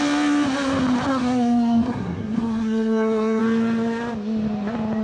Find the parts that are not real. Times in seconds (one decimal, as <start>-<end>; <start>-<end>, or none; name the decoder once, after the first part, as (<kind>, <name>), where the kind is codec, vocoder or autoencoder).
1.1-3.4 (codec, SNAC)